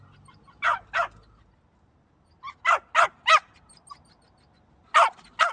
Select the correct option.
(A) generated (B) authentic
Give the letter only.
B